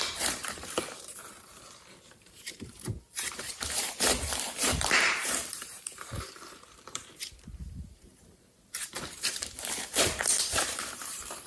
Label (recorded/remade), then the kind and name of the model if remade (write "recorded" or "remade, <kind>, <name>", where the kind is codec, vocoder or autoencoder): remade, vocoder, BigVGAN v2